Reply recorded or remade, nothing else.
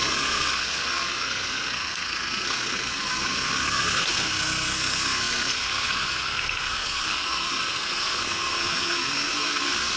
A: remade